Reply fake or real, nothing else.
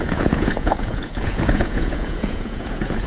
fake